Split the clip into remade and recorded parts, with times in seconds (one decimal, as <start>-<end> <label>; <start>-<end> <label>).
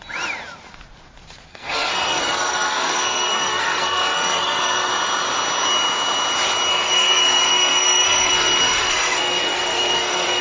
0.0-1.5 recorded; 1.5-4.9 remade; 4.9-6.7 recorded; 6.7-10.4 remade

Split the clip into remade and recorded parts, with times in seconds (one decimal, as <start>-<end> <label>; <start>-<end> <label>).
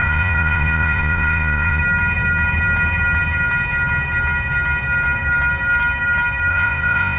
0.0-1.8 remade; 1.8-6.5 recorded; 6.5-7.2 remade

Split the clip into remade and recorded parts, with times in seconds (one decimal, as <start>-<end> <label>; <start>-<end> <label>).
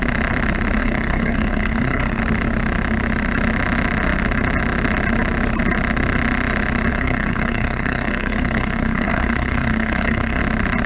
0.0-0.8 recorded; 0.8-2.2 remade; 2.2-6.9 recorded; 6.9-10.4 remade; 10.4-10.9 recorded